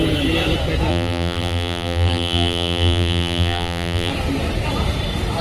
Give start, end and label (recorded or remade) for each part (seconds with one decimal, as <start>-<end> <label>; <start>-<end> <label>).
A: 0.0-0.9 recorded; 0.9-4.1 remade; 4.1-5.4 recorded